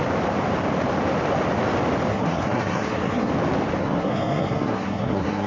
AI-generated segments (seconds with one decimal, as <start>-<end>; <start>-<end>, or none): 2.1-3.3; 3.8-5.5